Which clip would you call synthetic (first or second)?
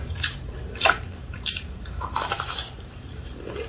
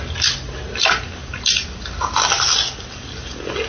first